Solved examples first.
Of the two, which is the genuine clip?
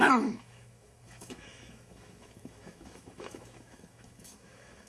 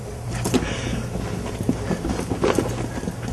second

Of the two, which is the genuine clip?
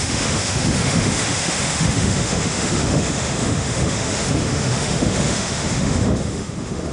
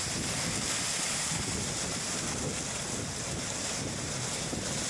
second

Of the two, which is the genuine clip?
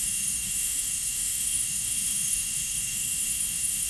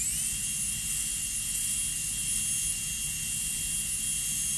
second